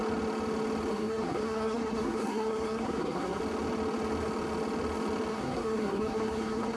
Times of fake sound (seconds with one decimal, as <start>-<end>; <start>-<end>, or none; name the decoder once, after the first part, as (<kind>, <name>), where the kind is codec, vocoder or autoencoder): 0.9-3.4 (codec, SNAC); 5.3-6.8